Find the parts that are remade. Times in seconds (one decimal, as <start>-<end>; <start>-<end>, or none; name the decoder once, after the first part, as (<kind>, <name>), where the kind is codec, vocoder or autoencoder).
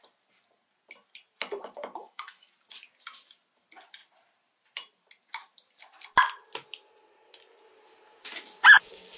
2.0-2.5 (autoencoder, DAC-VAE)